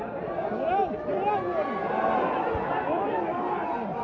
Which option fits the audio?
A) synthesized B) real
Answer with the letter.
B